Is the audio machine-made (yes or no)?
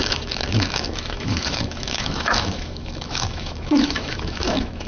yes